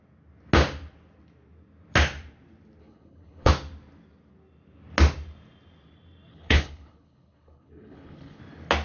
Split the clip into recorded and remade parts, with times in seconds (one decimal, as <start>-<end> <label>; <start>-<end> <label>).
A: 0.0-2.8 recorded; 2.8-3.5 remade; 3.5-6.3 recorded; 6.3-8.4 remade; 8.4-8.8 recorded